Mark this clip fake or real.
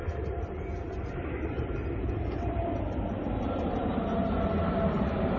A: fake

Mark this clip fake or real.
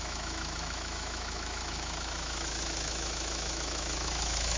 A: fake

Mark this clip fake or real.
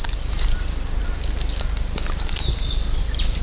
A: real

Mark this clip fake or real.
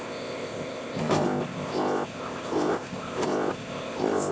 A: fake